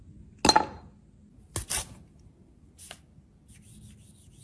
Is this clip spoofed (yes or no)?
no